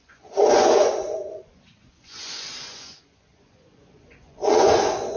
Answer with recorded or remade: remade